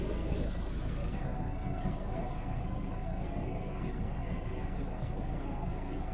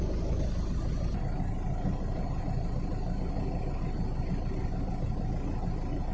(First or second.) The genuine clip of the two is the second